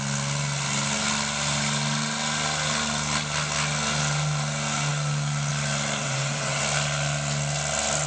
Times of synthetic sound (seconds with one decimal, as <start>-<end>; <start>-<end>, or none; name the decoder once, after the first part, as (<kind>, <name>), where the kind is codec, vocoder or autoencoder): 6.0-6.6 (vocoder, WaveNeXt)